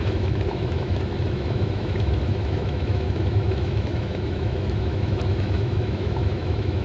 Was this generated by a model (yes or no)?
yes